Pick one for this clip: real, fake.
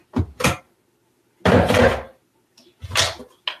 real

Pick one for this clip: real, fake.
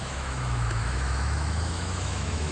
fake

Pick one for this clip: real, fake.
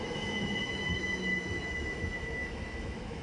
fake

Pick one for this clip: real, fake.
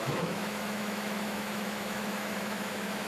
fake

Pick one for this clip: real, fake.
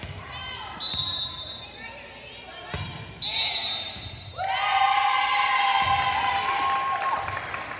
real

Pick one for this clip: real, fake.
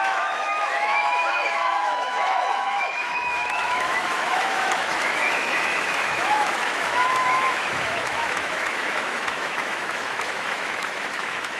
fake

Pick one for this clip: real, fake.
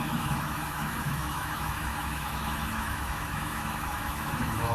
fake